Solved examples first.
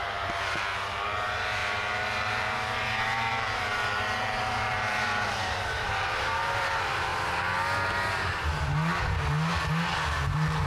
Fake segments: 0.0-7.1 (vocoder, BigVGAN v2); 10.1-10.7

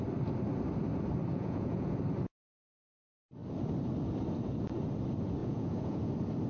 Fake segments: 1.3-2.0 (vocoder, Vocos); 5.4-6.1